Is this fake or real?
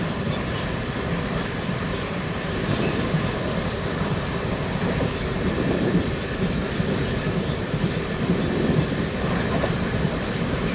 fake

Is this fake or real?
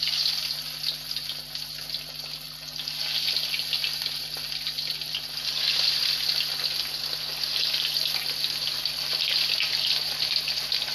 real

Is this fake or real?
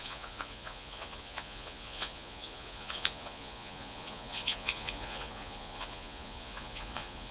fake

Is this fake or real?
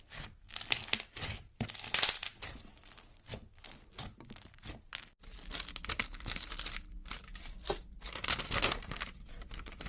real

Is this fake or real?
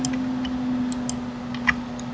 real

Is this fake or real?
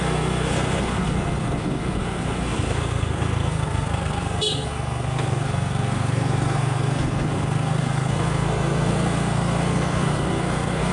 fake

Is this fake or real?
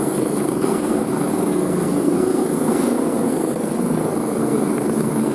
fake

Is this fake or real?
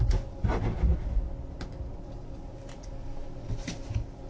real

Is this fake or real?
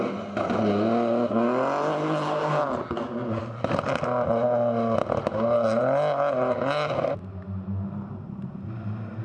real